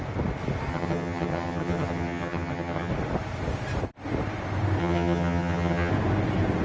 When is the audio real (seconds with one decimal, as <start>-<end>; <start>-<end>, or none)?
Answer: 0.0-0.7; 2.9-4.8; 5.9-6.6